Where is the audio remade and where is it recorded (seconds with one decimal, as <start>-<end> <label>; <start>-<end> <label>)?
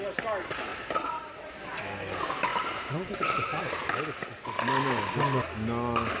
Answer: 0.0-0.7 recorded; 0.7-1.8 remade; 1.8-2.5 recorded; 2.5-3.6 remade; 3.6-6.2 recorded